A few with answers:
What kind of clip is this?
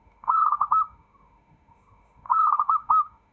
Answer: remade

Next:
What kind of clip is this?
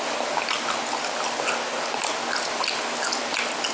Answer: recorded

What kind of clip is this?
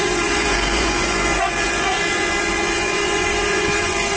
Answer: remade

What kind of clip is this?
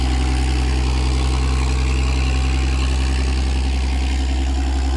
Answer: recorded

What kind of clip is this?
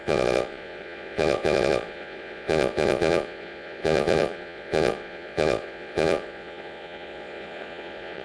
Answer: remade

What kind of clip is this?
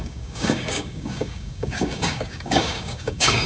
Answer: remade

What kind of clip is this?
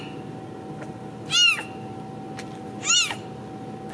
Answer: recorded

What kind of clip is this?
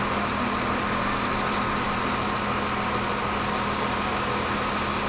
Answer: recorded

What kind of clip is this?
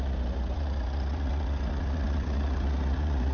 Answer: remade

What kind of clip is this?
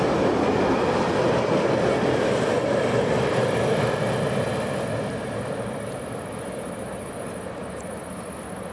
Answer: recorded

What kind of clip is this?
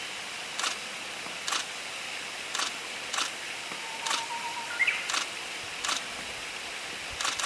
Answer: recorded